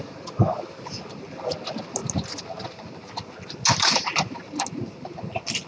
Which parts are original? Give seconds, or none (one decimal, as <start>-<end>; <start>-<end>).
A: 0.0-5.7